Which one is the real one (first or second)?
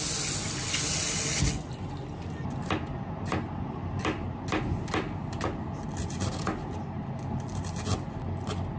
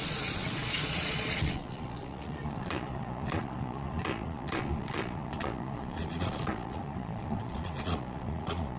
first